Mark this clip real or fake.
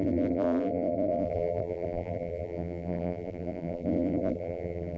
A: fake